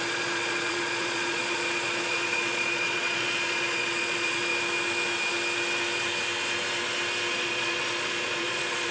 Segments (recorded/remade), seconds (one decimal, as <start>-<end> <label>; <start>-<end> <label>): 0.0-4.5 remade; 4.5-7.3 recorded; 7.3-8.9 remade